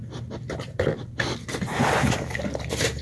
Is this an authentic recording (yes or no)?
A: yes